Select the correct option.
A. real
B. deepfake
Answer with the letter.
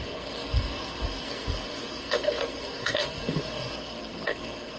B